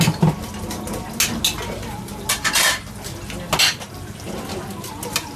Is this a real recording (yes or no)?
yes